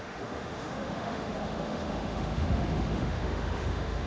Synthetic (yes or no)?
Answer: yes